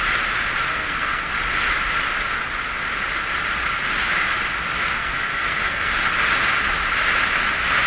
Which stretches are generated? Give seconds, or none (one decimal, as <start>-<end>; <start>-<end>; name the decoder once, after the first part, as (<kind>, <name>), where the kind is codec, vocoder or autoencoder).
0.7-1.3 (codec, SNAC); 4.9-5.9